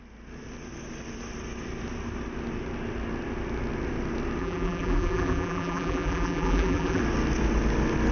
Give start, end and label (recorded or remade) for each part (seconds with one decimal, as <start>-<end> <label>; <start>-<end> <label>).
0.0-4.4 recorded; 4.4-7.0 remade; 7.0-8.1 recorded